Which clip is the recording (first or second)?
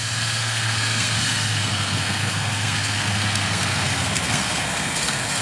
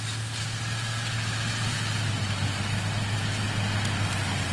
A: second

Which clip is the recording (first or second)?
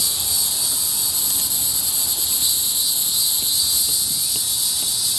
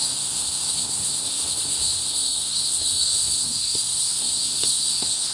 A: first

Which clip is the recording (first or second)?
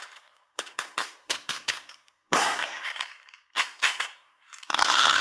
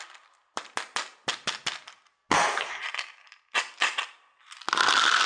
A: second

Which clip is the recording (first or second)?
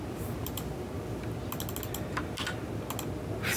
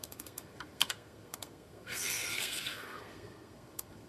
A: first